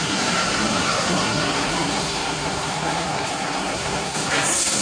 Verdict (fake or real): fake